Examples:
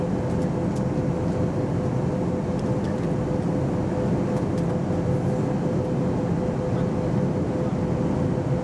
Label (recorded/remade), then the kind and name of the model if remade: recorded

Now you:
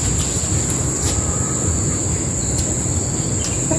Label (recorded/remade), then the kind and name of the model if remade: recorded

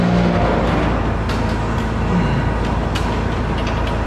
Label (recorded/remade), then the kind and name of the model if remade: recorded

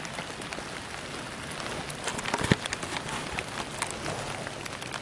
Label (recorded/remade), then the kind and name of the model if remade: recorded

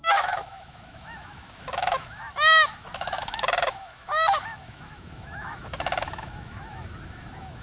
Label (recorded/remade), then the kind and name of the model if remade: remade, autoencoder, DAC-VAE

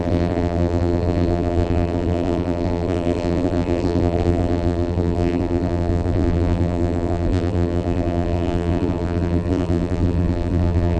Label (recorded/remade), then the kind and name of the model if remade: remade, vocoder, BigVGAN v2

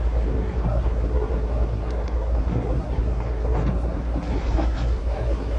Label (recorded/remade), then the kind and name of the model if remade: remade, codec, SNAC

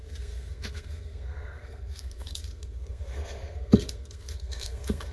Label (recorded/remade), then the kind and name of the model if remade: remade, codec, SNAC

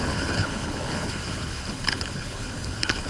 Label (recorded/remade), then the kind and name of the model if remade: remade, codec, HILCodec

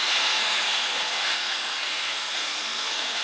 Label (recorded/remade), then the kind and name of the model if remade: remade, codec, SNAC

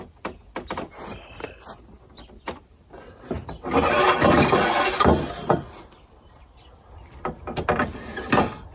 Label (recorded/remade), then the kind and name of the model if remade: recorded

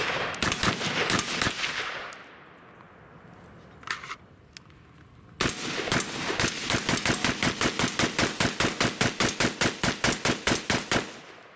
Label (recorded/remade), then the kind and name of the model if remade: recorded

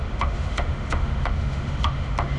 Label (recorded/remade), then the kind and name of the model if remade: remade, autoencoder, DAC-VAE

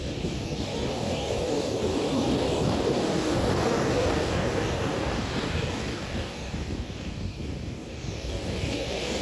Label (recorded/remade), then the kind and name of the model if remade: remade, codec, DAC